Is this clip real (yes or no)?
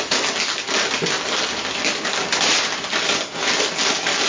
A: yes